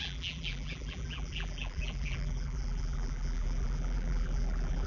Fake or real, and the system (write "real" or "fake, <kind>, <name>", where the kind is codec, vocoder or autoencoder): fake, vocoder, BigVGAN v2